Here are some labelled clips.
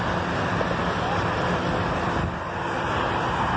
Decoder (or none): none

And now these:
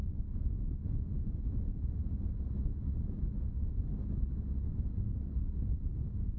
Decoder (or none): none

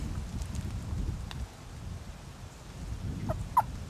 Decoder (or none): none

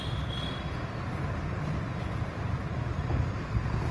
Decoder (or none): none